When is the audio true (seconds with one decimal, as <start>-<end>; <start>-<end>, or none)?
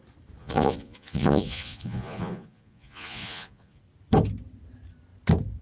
0.0-0.4; 3.8-5.6